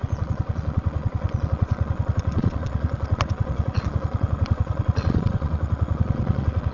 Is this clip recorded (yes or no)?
no